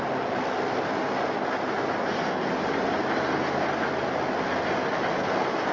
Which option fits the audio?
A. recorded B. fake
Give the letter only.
A